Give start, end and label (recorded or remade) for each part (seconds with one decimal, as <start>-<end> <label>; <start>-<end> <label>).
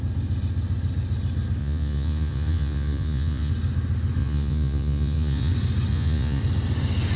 0.0-1.6 recorded; 1.6-3.5 remade; 3.5-4.2 recorded; 4.2-5.5 remade; 5.5-5.9 recorded; 5.9-6.4 remade; 6.4-7.2 recorded